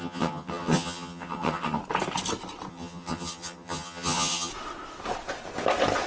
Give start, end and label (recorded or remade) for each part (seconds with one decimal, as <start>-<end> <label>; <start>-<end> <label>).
0.0-1.8 remade; 1.8-2.7 recorded; 2.7-4.5 remade; 4.5-6.1 recorded